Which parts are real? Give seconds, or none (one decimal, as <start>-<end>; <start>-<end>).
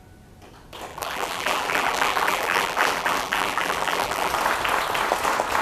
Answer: 0.0-0.9; 4.3-5.6